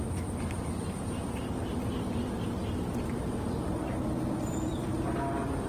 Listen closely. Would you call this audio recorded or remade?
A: recorded